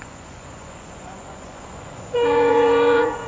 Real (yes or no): no